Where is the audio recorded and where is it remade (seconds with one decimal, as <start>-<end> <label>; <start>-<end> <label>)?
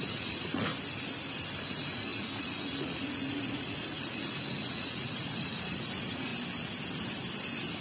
0.0-0.7 remade; 0.7-1.6 recorded; 1.6-6.3 remade; 6.3-7.8 recorded